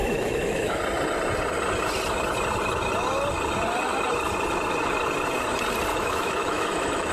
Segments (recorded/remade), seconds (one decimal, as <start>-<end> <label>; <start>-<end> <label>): 0.0-0.8 remade; 0.8-5.9 recorded; 5.9-7.1 remade